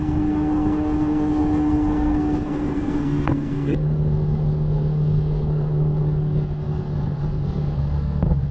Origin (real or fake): fake